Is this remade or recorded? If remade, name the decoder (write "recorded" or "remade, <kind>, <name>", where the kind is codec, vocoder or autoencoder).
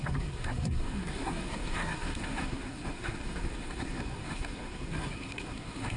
remade, codec, SNAC